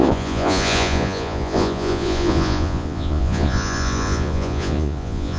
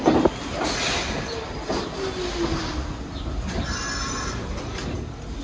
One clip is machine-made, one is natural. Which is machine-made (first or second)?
first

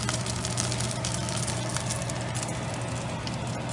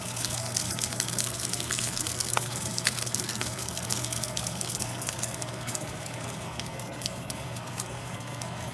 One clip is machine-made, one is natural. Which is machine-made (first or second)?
second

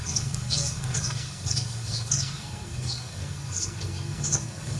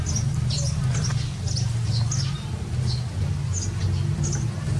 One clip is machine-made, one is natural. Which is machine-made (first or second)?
first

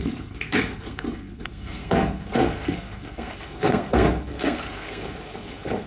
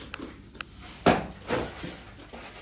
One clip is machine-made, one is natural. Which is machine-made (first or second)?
first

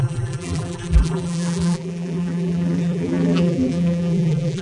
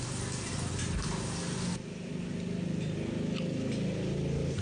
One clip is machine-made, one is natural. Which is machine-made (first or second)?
first